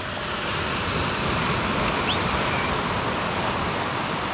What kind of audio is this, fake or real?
real